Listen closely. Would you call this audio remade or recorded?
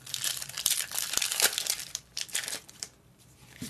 remade